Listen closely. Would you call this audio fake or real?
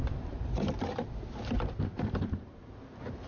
fake